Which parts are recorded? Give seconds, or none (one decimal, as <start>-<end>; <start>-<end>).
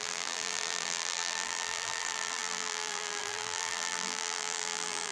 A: none